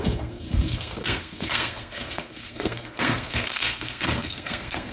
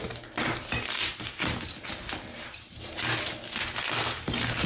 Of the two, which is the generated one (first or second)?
first